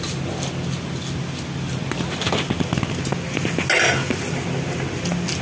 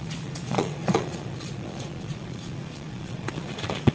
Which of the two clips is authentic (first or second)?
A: first